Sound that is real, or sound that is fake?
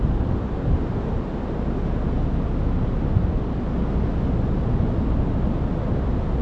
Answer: real